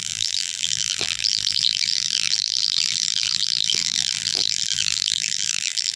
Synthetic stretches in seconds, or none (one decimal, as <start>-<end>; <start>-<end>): 0.0-6.0